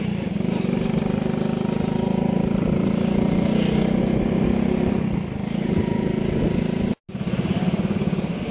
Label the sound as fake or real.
real